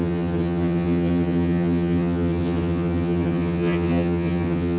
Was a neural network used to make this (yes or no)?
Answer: yes